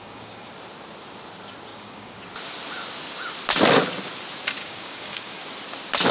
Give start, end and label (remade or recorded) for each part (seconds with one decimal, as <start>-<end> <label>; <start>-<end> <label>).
0.0-0.5 remade; 0.5-1.7 recorded; 1.7-2.2 remade; 2.2-4.6 recorded; 4.6-5.4 remade; 5.4-6.1 recorded